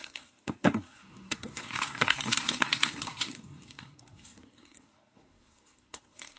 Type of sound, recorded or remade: remade